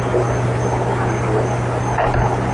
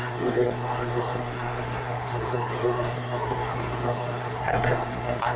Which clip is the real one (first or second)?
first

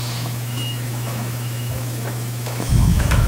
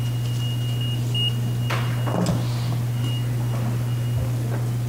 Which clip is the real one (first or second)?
second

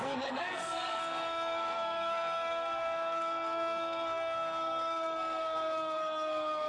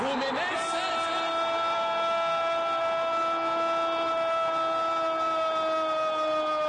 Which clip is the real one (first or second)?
second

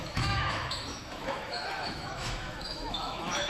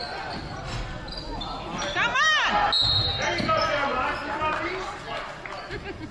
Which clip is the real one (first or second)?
second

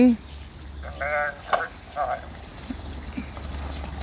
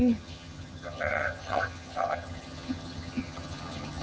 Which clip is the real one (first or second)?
first